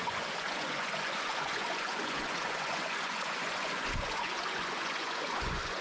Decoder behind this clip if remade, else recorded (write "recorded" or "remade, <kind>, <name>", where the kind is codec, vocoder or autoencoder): remade, vocoder, Vocos